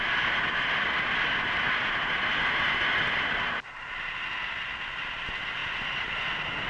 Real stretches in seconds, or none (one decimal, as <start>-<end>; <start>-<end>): 0.0-5.6; 6.3-6.7

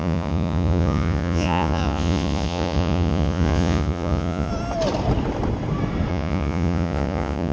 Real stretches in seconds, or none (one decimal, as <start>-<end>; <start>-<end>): 4.5-6.1

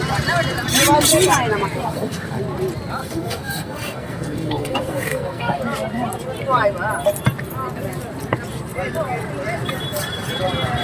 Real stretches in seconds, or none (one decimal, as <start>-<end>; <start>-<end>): 0.0-1.9; 2.4-3.0; 5.6-10.8

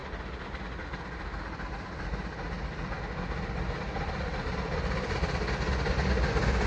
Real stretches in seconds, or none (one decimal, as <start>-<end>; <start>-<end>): 0.0-6.7

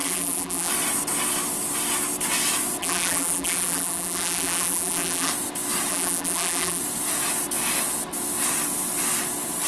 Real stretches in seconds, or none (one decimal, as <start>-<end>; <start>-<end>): 0.7-2.8; 5.3-5.9; 6.8-9.7

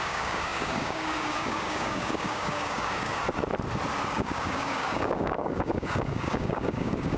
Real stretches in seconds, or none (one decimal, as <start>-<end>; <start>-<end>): 3.2-4.1